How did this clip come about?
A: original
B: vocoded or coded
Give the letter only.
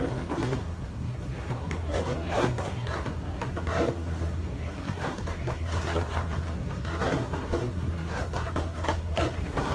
B